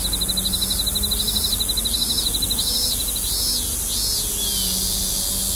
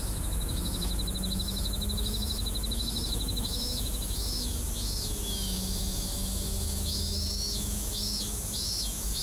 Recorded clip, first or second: first